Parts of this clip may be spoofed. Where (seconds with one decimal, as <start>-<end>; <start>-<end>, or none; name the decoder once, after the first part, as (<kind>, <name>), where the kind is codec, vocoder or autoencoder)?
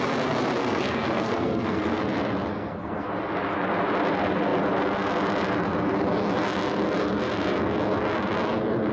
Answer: 0.6-2.0 (codec, SNAC); 2.5-3.1